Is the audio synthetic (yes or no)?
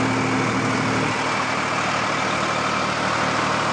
no